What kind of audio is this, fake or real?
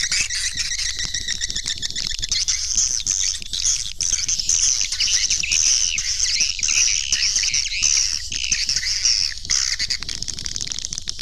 real